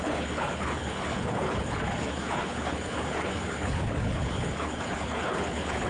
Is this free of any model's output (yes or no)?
no